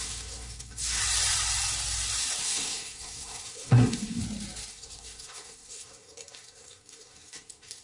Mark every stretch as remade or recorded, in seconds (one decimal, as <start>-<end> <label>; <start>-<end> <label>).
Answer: 0.0-1.0 remade; 1.0-2.4 recorded; 2.4-4.2 remade; 4.2-4.7 recorded; 4.7-7.8 remade